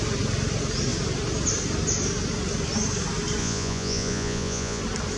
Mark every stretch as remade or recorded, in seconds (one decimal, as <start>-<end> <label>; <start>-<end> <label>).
0.0-3.4 recorded; 3.4-4.8 remade; 4.8-5.2 recorded

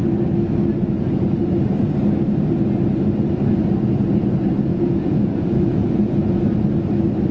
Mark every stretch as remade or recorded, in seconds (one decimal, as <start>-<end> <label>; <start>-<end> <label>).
0.0-4.7 recorded; 4.7-6.4 remade; 6.4-7.3 recorded

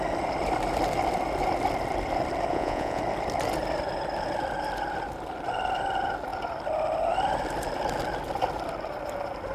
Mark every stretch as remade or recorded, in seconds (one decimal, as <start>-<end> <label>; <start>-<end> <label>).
0.0-2.5 recorded; 2.5-3.0 remade; 3.0-9.5 recorded

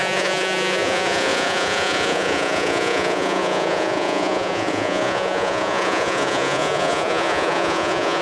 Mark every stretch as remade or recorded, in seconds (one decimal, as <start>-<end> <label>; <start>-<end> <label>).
0.0-8.2 remade

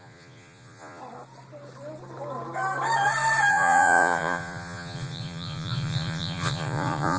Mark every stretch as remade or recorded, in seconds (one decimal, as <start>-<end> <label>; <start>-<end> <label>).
0.0-1.0 remade; 1.0-3.5 recorded; 3.5-7.2 remade